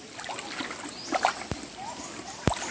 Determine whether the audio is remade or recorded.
recorded